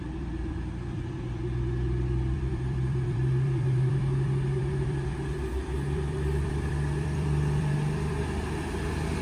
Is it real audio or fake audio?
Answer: fake